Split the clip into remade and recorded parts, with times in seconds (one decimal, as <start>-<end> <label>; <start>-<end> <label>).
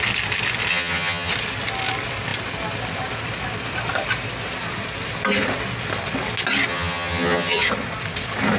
0.0-0.7 recorded; 0.7-1.3 remade; 1.3-6.7 recorded; 6.7-7.6 remade; 7.6-8.6 recorded